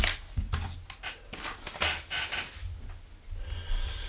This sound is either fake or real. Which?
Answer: real